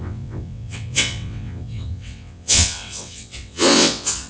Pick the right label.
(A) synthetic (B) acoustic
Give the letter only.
A